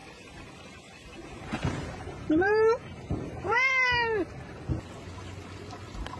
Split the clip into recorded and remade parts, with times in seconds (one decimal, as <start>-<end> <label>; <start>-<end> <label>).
0.0-3.7 remade; 3.7-6.2 recorded